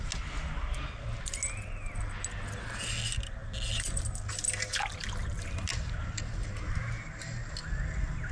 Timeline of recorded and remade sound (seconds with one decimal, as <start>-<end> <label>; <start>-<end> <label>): 0.0-8.3 recorded